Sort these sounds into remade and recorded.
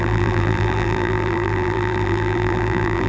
remade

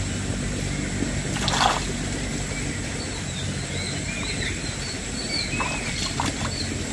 recorded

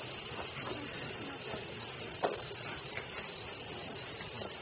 recorded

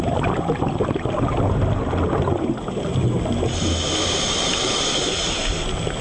recorded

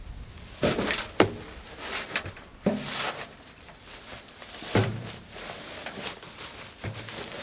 remade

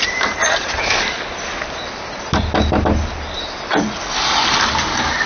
recorded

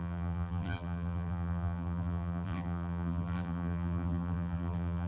remade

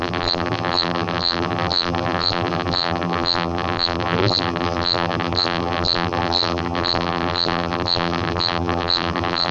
remade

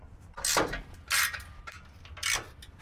recorded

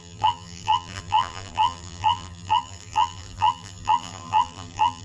remade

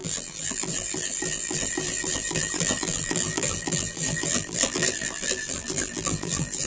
remade